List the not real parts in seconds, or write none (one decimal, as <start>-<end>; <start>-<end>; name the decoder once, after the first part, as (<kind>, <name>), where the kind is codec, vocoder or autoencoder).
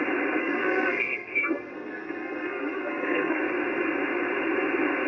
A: 0.4-3.4 (codec, SNAC)